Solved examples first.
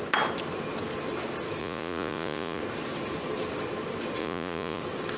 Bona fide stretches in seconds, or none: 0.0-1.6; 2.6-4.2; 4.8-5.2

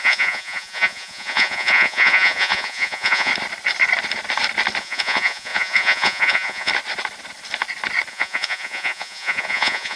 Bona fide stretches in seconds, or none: 3.3-4.8; 6.7-8.1

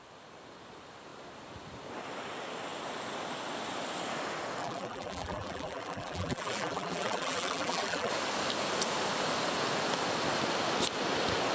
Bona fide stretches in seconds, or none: 0.0-4.6; 8.1-11.5

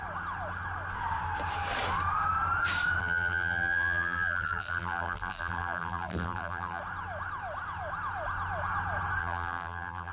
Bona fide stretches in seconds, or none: 0.0-3.0; 6.8-9.2

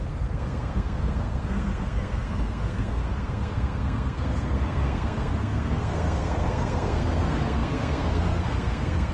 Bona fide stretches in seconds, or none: none

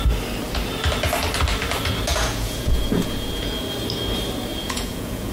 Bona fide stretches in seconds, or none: 0.0-2.1; 3.7-4.5